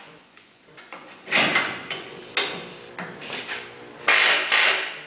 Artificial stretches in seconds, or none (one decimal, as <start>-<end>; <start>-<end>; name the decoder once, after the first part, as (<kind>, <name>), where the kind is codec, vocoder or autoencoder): 0.0-2.2 (vocoder, Vocos)